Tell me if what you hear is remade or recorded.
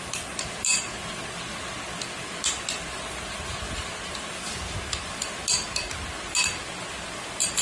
recorded